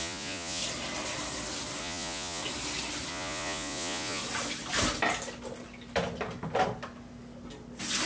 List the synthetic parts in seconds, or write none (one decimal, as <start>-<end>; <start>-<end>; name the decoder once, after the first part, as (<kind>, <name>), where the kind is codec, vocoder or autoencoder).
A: 0.0-0.6 (vocoder, Vocos); 1.8-2.4; 3.1-4.2